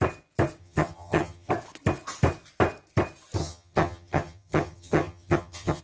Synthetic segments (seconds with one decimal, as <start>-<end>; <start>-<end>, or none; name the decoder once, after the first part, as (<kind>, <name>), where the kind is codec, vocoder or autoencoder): 0.6-1.5 (vocoder, HiFi-GAN); 3.4-5.8